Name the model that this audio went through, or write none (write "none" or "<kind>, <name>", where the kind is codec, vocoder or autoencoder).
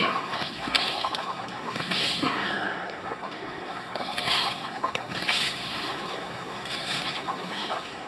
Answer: codec, SNAC